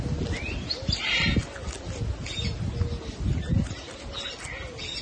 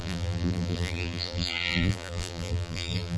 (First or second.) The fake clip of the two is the second